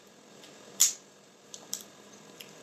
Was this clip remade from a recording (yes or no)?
yes